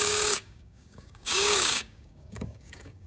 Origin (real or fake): fake